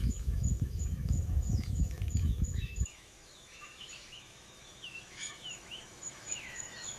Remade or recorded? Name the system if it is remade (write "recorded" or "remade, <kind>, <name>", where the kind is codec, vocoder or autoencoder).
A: remade, autoencoder, DAC-VAE